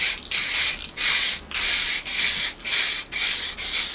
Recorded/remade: recorded